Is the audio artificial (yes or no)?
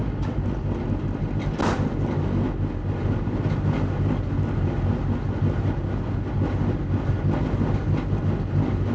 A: no